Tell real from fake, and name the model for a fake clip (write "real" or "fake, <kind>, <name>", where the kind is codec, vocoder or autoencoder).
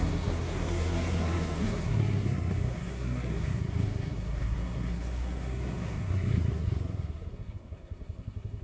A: fake, codec, SNAC